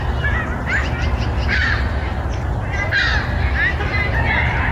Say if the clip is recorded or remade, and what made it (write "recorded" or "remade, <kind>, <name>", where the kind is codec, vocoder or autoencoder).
recorded